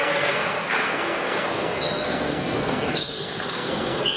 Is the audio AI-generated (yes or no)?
yes